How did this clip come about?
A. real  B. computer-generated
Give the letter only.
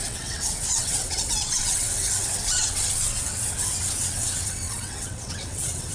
B